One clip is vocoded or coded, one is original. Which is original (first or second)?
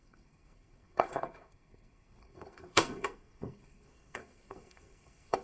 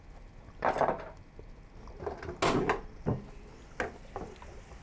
second